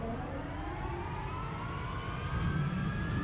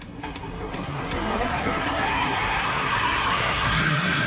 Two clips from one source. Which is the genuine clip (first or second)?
first